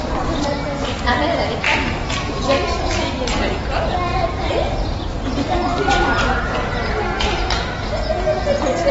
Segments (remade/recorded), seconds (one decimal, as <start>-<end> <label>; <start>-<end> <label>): 0.0-8.9 recorded